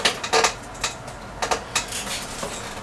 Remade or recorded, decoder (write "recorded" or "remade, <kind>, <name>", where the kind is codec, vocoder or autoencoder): recorded